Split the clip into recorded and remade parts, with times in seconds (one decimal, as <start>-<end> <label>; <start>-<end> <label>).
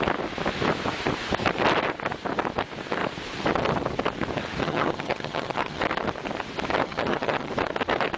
0.0-4.6 recorded; 4.6-5.8 remade; 5.8-6.8 recorded; 6.8-7.5 remade; 7.5-8.2 recorded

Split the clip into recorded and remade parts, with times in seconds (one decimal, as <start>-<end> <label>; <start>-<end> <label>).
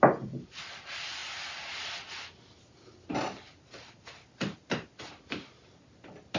0.0-6.4 recorded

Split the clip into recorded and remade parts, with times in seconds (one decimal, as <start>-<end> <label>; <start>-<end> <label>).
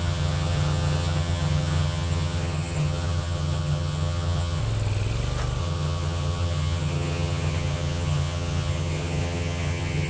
0.0-4.6 remade; 4.6-5.6 recorded; 5.6-10.1 remade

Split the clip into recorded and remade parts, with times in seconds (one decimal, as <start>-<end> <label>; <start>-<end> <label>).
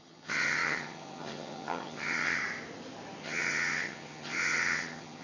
0.0-2.4 remade; 2.4-3.2 recorded; 3.2-5.2 remade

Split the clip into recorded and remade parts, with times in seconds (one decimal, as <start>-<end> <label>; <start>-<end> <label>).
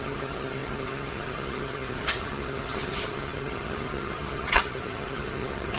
0.0-5.8 remade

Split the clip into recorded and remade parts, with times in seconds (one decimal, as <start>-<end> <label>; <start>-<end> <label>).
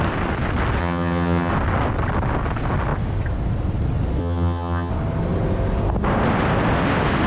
0.0-0.8 recorded; 0.8-1.5 remade; 1.5-4.2 recorded; 4.2-4.9 remade; 4.9-7.3 recorded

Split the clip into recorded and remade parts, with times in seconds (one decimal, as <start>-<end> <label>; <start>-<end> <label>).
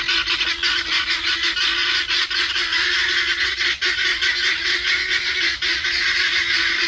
0.0-6.9 recorded